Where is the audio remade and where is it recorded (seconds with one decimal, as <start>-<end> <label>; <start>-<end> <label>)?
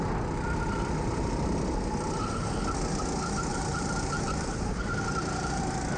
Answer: 0.0-3.5 recorded; 3.5-5.6 remade; 5.6-6.0 recorded